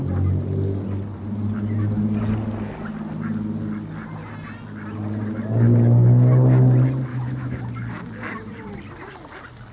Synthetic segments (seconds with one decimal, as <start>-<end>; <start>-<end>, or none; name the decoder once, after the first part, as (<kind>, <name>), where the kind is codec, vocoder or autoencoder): 7.1-7.6 (autoencoder, DAC-VAE)